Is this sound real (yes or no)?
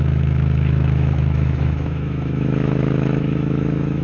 no